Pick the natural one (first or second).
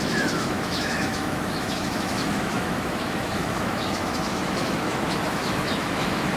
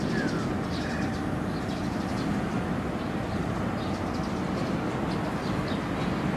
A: second